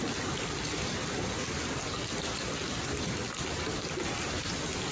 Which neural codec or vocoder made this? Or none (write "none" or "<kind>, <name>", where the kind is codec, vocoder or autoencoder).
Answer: none